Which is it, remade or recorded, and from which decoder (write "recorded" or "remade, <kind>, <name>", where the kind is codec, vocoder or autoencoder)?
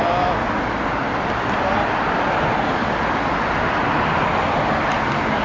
recorded